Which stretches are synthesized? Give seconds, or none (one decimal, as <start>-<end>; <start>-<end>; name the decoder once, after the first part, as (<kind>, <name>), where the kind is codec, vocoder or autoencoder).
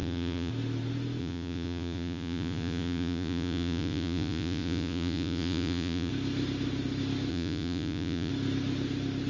0.0-0.5 (vocoder, Vocos); 1.2-6.1; 7.3-8.3